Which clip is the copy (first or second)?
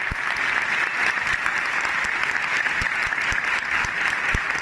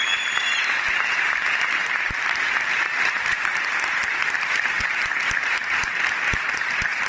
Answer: second